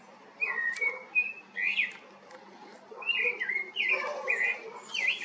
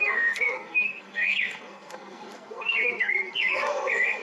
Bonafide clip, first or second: first